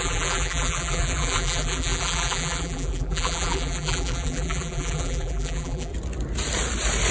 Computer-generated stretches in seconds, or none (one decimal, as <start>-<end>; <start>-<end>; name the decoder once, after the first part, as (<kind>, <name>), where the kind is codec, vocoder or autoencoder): 0.0-5.9 (vocoder, BigVGAN v2)